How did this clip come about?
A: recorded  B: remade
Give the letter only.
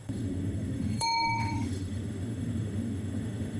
B